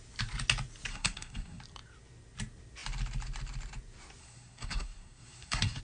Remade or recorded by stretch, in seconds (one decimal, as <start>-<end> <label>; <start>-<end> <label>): 0.0-0.9 recorded; 0.9-1.6 remade; 1.6-4.2 recorded; 4.2-5.8 remade

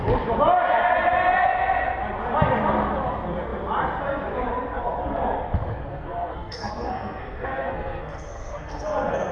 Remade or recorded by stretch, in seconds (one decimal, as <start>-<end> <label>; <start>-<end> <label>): 0.0-5.9 recorded; 5.9-9.3 remade

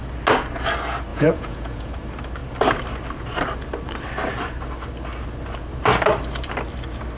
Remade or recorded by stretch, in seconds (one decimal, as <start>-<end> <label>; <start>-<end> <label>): 0.0-1.1 recorded; 1.1-1.9 remade; 1.9-7.2 recorded

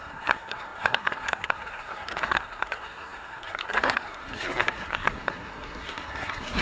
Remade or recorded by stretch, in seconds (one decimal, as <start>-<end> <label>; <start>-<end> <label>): 0.0-6.6 remade

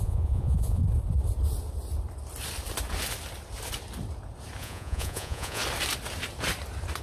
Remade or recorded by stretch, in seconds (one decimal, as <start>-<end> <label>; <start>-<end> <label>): 0.0-0.8 remade; 0.8-4.6 recorded; 4.6-5.6 remade; 5.6-7.0 recorded

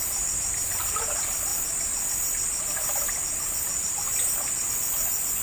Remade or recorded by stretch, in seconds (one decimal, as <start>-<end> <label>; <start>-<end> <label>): 0.0-5.4 recorded

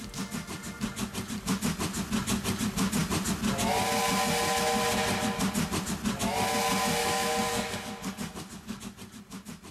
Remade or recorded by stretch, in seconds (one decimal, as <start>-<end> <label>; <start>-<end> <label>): 0.0-7.0 recorded; 7.0-8.8 remade; 8.8-9.7 recorded